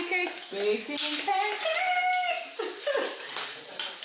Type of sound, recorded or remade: recorded